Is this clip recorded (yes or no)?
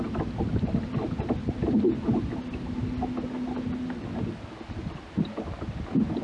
yes